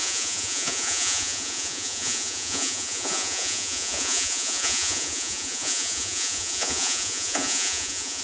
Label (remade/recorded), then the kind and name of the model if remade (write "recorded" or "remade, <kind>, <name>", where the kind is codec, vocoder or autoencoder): remade, vocoder, Vocos